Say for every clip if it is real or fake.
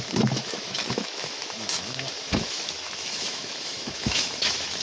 fake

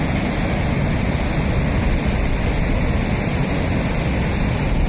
real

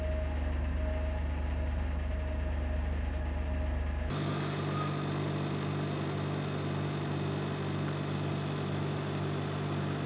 real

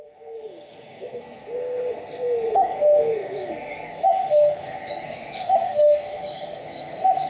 fake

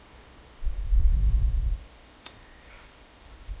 fake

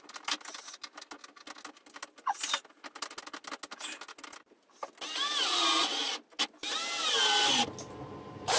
real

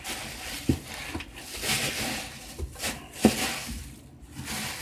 real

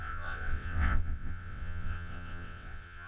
fake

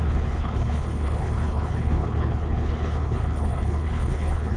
fake